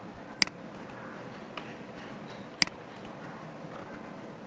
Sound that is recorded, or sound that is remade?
recorded